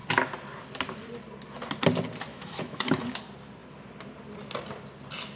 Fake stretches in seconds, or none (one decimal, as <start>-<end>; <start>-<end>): 2.3-3.2